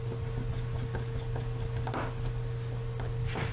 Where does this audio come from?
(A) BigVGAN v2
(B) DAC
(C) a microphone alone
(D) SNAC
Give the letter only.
C